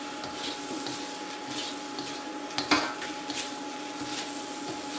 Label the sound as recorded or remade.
recorded